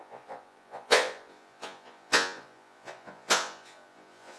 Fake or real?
fake